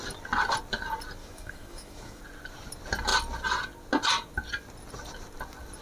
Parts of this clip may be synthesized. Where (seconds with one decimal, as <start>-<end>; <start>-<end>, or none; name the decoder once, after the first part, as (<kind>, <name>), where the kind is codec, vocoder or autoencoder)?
1.2-2.2 (autoencoder, DAC-VAE)